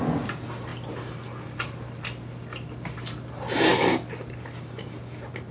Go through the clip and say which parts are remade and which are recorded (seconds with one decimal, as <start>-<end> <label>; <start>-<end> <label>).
0.0-5.5 recorded